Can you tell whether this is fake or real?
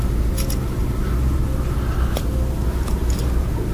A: real